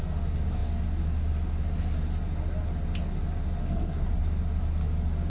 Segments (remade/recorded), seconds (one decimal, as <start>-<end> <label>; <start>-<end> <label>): 0.0-3.6 recorded; 3.6-4.1 remade; 4.1-5.3 recorded